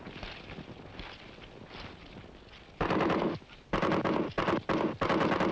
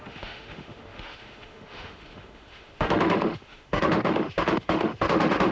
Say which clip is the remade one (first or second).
second